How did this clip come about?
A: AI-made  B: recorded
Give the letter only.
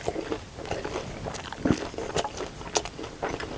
B